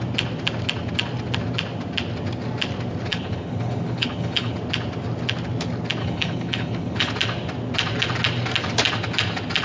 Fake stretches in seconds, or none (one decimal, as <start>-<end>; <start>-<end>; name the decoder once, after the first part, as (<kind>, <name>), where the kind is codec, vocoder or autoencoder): 3.1-4.6 (codec, HILCodec); 6.0-7.1